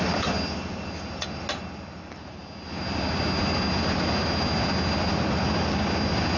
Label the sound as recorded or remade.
recorded